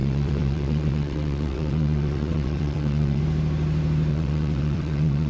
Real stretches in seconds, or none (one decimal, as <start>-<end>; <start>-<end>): 3.2-4.1